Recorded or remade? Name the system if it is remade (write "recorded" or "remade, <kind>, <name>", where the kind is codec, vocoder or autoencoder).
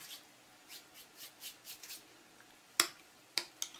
recorded